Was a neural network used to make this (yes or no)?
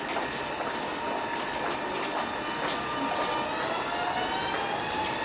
no